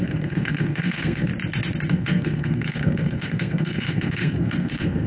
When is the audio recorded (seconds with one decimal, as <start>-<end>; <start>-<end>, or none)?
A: 1.3-1.9